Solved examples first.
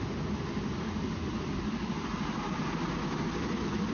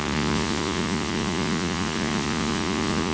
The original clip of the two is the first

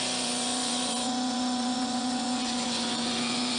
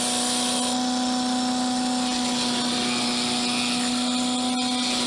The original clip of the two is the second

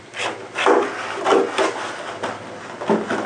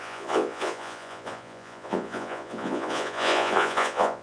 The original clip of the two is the first